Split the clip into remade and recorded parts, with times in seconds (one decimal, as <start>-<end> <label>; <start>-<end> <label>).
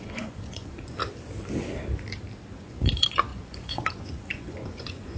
0.0-1.0 remade; 1.0-2.6 recorded; 2.6-5.2 remade